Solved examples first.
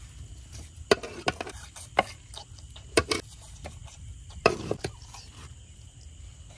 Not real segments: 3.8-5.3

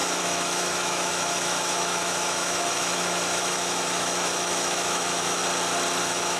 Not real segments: 0.0-5.4; 6.0-6.4

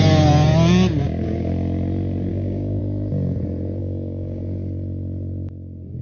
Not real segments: 2.3-2.8; 3.8-4.4

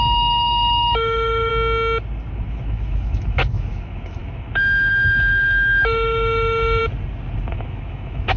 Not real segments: 0.0-1.5; 2.3-6.8; 7.5-8.4

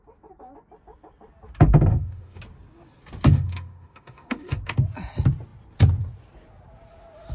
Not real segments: 1.9-2.4; 3.3-4.6

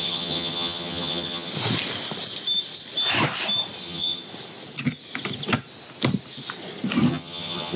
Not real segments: 0.0-1.5; 3.8-4.2; 7.1-7.8

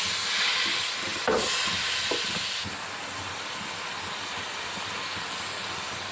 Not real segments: none